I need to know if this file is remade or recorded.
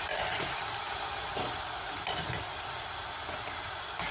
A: recorded